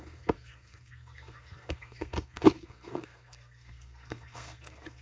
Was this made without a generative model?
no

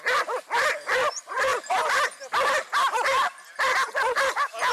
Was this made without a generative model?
yes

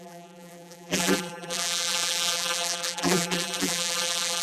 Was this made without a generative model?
no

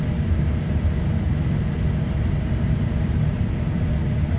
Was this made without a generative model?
yes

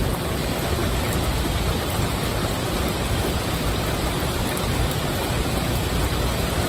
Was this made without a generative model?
yes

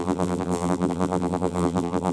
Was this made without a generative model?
no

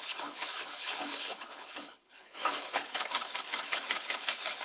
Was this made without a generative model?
no